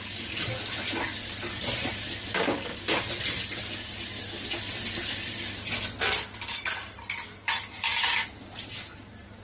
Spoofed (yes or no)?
no